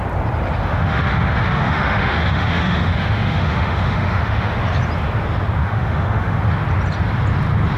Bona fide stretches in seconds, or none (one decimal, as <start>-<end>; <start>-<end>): 0.0-0.6; 4.5-5.6; 6.4-7.8